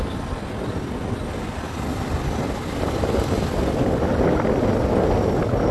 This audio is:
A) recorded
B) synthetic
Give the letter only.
A